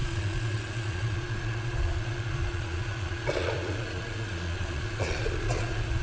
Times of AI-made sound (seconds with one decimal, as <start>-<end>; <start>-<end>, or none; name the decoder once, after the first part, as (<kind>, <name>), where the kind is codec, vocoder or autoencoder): 0.0-6.0 (vocoder, Vocos)